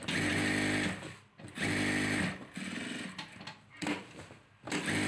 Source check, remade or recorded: recorded